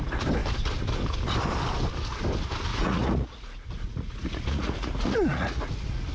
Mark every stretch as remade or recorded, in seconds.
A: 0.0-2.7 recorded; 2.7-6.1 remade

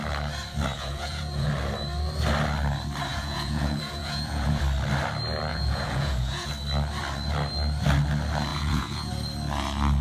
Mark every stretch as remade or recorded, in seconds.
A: 0.0-0.7 recorded; 0.7-1.5 remade; 1.5-3.1 recorded; 3.1-4.6 remade; 4.6-5.5 recorded; 5.5-6.5 remade; 6.5-8.5 recorded; 8.5-9.1 remade; 9.1-10.0 recorded

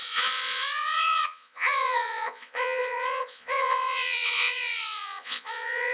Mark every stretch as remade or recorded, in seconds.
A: 0.0-5.9 remade

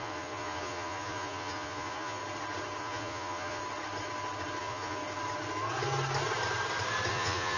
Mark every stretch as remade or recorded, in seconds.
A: 0.0-2.2 remade; 2.2-2.8 recorded; 2.8-3.6 remade; 3.6-4.6 recorded; 4.6-5.0 remade; 5.0-7.1 recorded; 7.1-7.6 remade

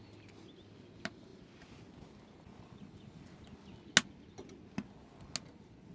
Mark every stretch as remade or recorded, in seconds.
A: 0.0-5.9 recorded

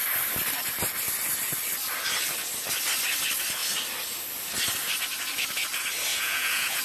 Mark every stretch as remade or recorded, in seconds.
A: 0.0-6.1 recorded; 6.1-6.8 remade

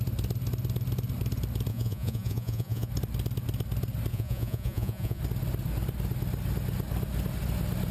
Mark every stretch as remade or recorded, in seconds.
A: 0.0-1.7 recorded; 1.7-2.9 remade; 2.9-4.1 recorded; 4.1-5.2 remade; 5.2-7.9 recorded

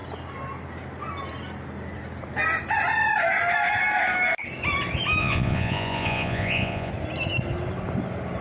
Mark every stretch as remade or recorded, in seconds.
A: 0.0-5.2 recorded; 5.2-6.9 remade; 6.9-8.4 recorded